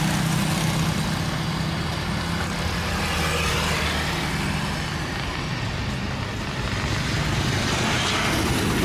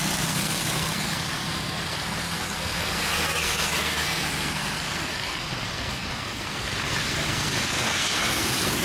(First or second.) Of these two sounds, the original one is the first